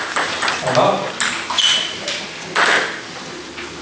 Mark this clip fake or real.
real